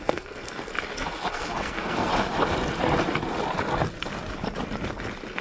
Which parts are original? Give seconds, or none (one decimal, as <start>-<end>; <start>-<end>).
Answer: 0.7-1.3; 2.1-5.4